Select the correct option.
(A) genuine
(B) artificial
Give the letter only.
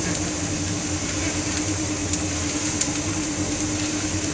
B